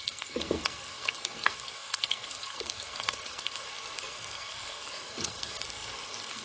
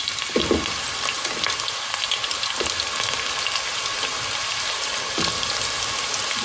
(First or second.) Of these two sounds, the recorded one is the second